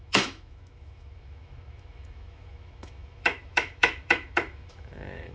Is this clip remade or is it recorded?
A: remade